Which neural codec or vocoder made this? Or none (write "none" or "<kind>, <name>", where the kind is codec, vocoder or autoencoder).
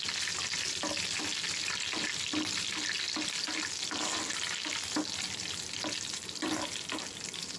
none